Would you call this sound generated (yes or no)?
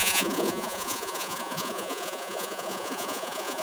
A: yes